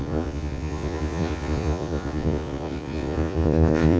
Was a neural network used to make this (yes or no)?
yes